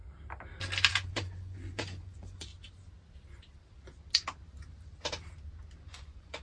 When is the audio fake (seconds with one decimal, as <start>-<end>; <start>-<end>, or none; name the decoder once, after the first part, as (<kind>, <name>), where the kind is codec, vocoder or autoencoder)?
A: 0.9-2.5 (vocoder, Vocos); 5.8-6.4